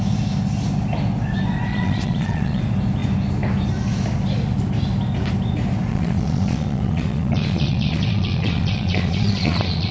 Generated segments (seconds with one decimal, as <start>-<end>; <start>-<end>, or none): 1.7-2.6; 5.9-9.9